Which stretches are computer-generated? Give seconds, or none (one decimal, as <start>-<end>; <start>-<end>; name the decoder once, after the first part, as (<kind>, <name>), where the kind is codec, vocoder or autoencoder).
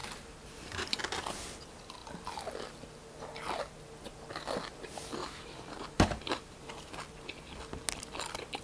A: 0.0-1.0 (vocoder, BigVGAN v2); 5.2-7.0